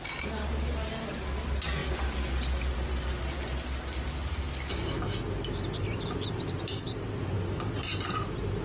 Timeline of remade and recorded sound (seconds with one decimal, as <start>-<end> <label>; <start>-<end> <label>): 0.0-8.6 recorded